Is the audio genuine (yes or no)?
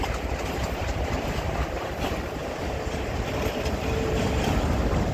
no